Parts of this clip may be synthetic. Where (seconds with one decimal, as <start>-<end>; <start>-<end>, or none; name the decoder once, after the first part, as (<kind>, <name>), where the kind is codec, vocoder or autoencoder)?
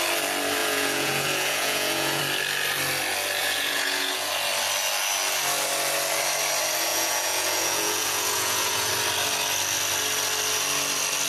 0.6-2.2 (vocoder, Vocos); 3.4-4.3; 6.9-8.9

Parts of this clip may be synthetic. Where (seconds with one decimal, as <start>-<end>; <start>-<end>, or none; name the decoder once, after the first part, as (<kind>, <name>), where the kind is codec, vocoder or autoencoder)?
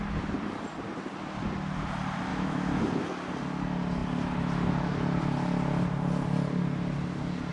2.3-2.8 (autoencoder, DAC-VAE)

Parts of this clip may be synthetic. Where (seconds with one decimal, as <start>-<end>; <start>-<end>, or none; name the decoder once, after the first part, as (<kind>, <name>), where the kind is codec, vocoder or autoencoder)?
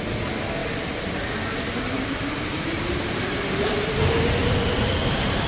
0.6-3.9 (vocoder, BigVGAN v2); 4.4-5.5